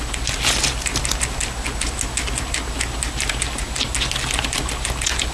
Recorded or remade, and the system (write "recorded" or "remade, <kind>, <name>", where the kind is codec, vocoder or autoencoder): recorded